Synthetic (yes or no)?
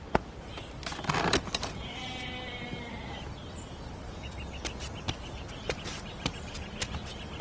no